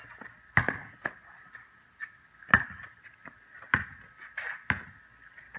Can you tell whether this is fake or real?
real